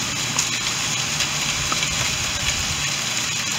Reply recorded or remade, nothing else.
recorded